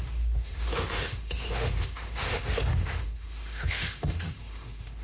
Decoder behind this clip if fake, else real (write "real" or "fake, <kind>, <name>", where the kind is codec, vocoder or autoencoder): fake, autoencoder, DAC-VAE